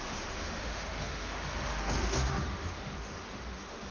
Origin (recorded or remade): remade